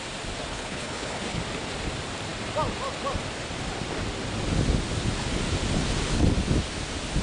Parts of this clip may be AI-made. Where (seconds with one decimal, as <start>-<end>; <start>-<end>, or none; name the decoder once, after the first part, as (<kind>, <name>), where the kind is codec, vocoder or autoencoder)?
0.5-1.4 (codec, HILCodec)